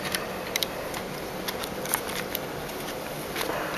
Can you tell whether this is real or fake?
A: real